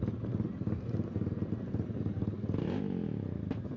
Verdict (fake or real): real